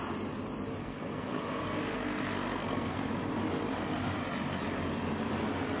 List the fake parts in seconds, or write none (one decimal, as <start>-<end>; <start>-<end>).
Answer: 0.8-3.1